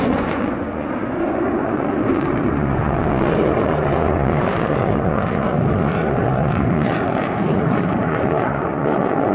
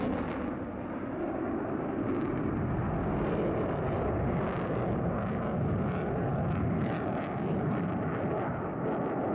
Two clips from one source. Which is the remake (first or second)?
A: first